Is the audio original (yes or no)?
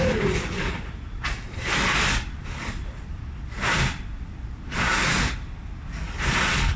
yes